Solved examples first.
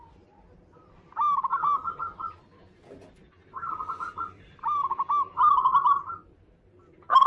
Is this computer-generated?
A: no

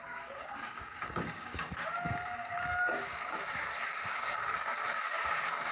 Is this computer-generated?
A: yes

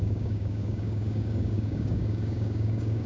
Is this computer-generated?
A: yes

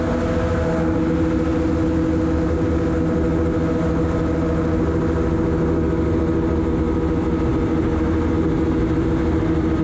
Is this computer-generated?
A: no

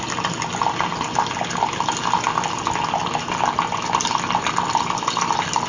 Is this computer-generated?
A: no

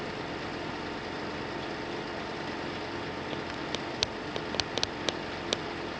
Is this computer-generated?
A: no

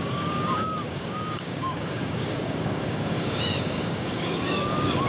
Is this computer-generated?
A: yes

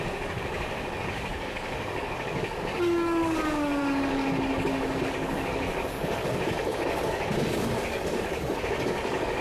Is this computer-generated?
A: yes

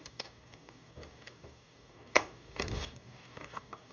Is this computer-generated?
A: yes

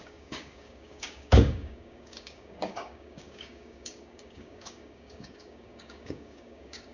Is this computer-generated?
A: yes